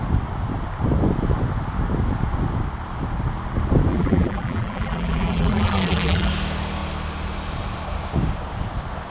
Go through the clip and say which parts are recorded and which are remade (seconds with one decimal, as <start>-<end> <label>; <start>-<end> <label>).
0.0-3.9 recorded; 3.9-6.3 remade; 6.3-9.1 recorded

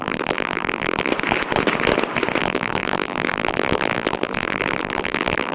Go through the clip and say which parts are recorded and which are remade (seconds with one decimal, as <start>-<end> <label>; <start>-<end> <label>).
0.0-1.1 remade; 1.1-2.4 recorded; 2.4-5.5 remade

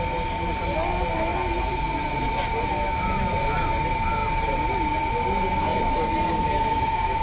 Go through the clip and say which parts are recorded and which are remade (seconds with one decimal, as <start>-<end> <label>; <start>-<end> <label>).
0.0-7.2 recorded

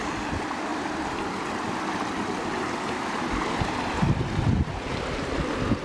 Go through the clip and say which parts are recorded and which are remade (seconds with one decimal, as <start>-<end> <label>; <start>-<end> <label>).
0.0-5.8 remade

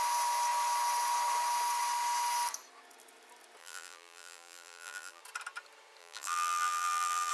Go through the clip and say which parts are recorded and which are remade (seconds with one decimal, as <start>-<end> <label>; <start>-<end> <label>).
0.0-3.6 recorded; 3.6-5.2 remade; 5.2-6.0 recorded; 6.0-7.3 remade

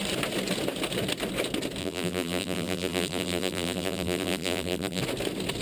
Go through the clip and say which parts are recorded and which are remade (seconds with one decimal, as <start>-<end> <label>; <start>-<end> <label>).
0.0-1.8 recorded; 1.8-5.0 remade; 5.0-5.6 recorded